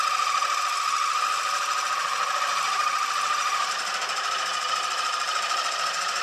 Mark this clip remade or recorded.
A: recorded